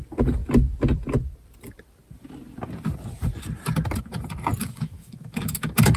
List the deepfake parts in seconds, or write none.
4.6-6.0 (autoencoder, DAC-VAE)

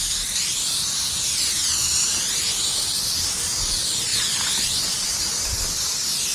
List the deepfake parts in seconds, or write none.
none

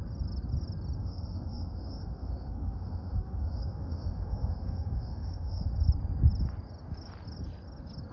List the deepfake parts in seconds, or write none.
1.0-5.7 (autoencoder, DAC-VAE)

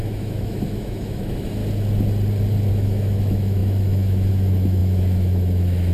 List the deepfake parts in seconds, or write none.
0.0-1.6 (autoencoder, DAC-VAE); 2.7-5.9

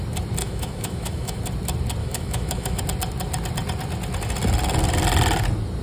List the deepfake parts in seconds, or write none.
0.4-1.4 (autoencoder, DAC-VAE); 2.0-2.8

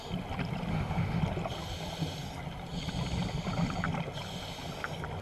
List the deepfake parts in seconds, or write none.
0.7-1.2 (autoencoder, DAC-VAE)

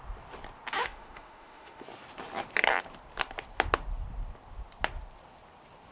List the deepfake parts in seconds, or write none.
0.8-1.8 (autoencoder, DAC-VAE)

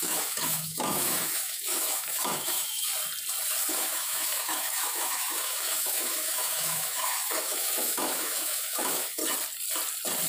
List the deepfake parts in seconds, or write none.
0.0-2.9 (autoencoder, DAC-VAE); 3.7-9.2